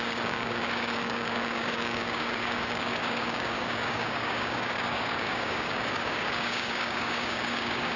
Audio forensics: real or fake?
fake